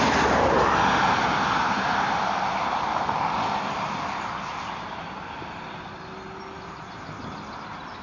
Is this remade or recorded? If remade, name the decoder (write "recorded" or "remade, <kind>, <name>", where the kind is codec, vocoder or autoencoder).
recorded